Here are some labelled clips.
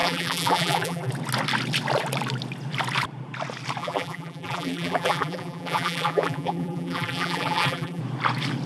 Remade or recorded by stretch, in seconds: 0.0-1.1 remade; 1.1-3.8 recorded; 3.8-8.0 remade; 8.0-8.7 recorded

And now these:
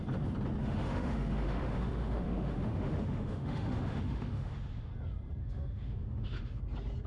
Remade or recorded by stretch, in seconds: 0.0-0.6 recorded; 0.6-4.9 remade; 4.9-5.4 recorded; 5.4-6.6 remade; 6.6-7.1 recorded

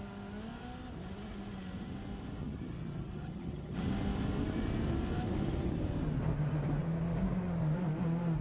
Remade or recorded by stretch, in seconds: 0.0-2.4 recorded; 2.4-3.8 remade; 3.8-8.4 recorded

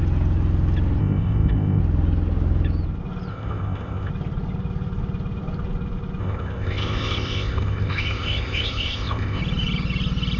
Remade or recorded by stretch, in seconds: 0.0-1.0 recorded; 1.0-1.8 remade; 1.8-3.3 recorded; 3.3-4.1 remade; 4.1-6.2 recorded; 6.2-9.4 remade; 9.4-10.4 recorded

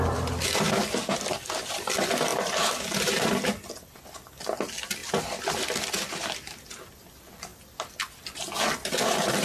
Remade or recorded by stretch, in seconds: 0.0-5.0 remade; 5.0-6.9 recorded; 6.9-7.5 remade; 7.5-8.2 recorded; 8.2-9.4 remade

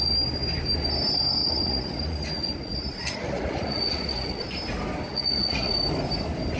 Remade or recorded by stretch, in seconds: 0.0-1.4 recorded; 1.4-4.6 remade; 4.6-5.1 recorded; 5.1-5.7 remade; 5.7-6.6 recorded